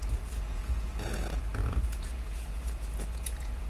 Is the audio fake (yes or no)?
yes